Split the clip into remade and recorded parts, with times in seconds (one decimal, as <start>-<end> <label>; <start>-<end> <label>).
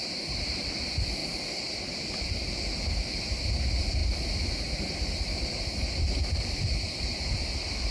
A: 0.0-7.9 recorded